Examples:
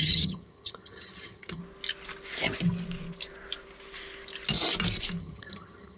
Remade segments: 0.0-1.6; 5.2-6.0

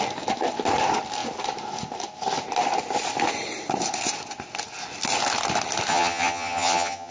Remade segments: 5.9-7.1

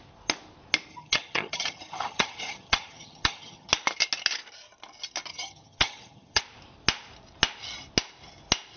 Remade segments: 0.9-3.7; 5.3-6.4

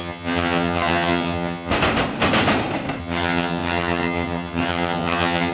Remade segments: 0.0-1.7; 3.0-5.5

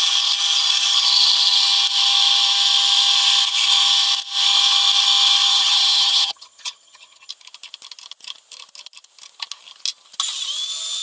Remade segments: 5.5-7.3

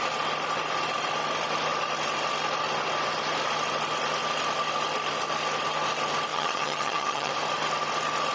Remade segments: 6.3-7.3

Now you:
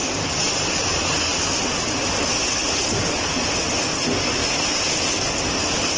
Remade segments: none